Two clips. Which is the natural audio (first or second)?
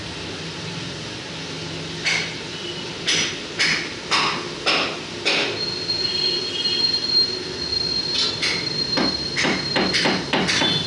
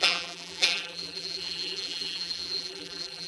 first